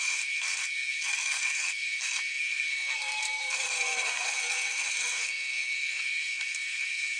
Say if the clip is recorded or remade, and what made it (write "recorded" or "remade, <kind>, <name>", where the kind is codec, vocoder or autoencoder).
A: remade, codec, SNAC